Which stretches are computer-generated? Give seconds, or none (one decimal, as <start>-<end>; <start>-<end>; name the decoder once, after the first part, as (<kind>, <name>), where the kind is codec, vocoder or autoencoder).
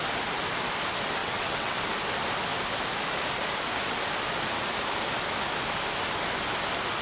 1.2-1.8 (vocoder, WaveNeXt)